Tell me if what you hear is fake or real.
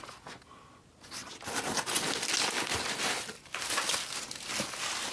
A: real